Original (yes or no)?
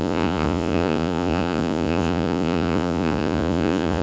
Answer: no